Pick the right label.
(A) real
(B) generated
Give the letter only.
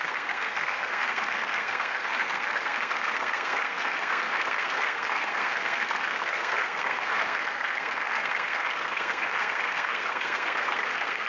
B